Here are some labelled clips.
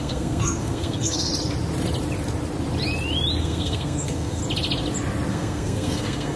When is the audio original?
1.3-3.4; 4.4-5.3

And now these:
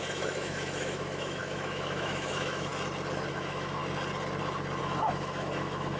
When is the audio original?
2.7-3.3; 3.8-4.8

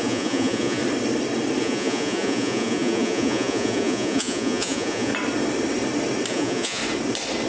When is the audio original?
0.8-1.6; 5.1-6.3; 6.8-7.5

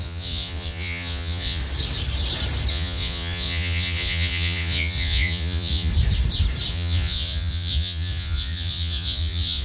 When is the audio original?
1.6-2.7; 5.9-6.7

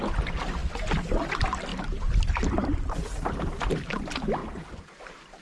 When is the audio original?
0.0-5.4

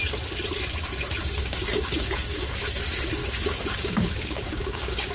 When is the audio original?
0.0-1.2; 2.8-3.2

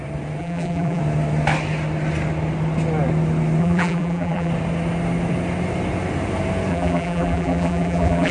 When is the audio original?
0.0-0.4; 1.0-3.6; 4.5-6.7